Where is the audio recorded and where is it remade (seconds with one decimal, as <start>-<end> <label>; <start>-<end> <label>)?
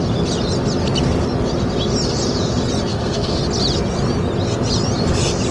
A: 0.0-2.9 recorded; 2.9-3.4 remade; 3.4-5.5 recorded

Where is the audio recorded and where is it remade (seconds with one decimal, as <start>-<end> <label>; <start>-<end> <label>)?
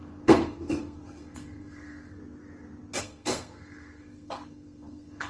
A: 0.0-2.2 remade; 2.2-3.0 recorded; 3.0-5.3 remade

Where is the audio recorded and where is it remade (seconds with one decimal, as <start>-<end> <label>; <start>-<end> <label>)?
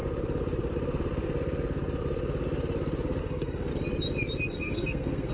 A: 0.0-3.2 recorded; 3.2-3.7 remade; 3.7-4.5 recorded; 4.5-5.3 remade